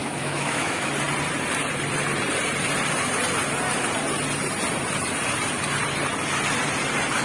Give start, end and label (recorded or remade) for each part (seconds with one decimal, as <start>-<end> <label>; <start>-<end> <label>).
0.0-0.9 remade; 0.9-7.2 recorded